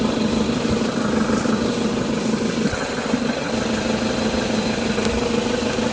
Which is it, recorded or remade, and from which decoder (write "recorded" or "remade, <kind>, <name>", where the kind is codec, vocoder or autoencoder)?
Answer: recorded